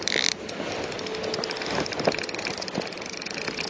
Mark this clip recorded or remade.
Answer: recorded